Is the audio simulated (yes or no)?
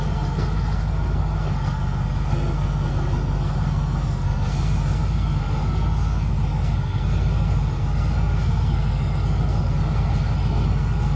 yes